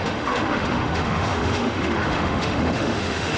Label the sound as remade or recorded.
remade